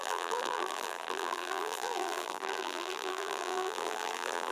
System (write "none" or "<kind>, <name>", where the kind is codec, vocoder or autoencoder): vocoder, BigVGAN v2